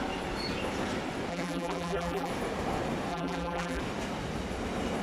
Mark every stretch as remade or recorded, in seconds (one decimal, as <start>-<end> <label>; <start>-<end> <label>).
0.0-1.3 recorded; 1.3-2.3 remade; 2.3-3.1 recorded; 3.1-3.8 remade; 3.8-5.0 recorded